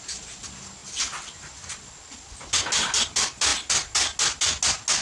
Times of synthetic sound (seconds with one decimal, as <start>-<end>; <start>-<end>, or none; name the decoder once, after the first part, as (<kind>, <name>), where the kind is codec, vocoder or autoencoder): none